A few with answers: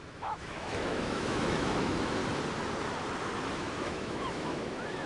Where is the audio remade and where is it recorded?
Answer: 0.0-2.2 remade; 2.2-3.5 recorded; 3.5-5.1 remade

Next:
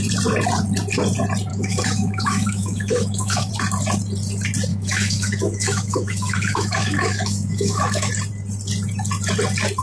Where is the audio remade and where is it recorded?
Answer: 0.0-1.5 recorded; 1.5-3.5 remade; 3.5-4.7 recorded; 4.7-8.1 remade; 8.1-9.8 recorded

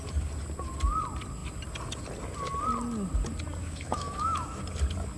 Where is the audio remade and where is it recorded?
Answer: 0.0-3.6 recorded; 3.6-4.6 remade; 4.6-5.2 recorded

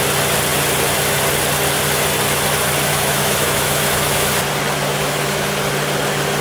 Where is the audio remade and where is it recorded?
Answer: 0.0-2.9 recorded; 2.9-4.3 remade; 4.3-4.9 recorded; 4.9-5.5 remade; 5.5-6.4 recorded

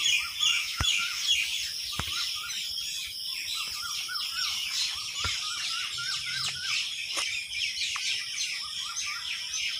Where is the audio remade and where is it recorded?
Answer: 0.0-0.5 recorded; 0.5-1.2 remade; 1.2-9.8 recorded

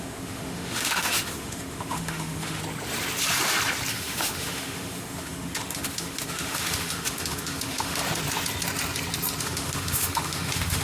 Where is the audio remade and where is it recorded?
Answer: 0.0-2.6 remade; 2.6-3.9 recorded; 3.9-8.0 remade; 8.0-9.4 recorded; 9.4-10.8 remade